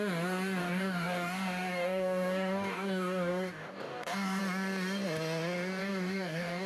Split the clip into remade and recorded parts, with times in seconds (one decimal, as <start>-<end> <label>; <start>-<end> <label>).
0.0-0.6 recorded; 0.6-4.4 remade; 4.4-5.8 recorded; 5.8-6.7 remade